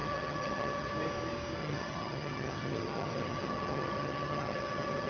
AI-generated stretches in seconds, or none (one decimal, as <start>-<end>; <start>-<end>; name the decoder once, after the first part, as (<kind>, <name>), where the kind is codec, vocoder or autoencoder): 0.0-0.9 (vocoder, HiFi-GAN); 1.6-5.1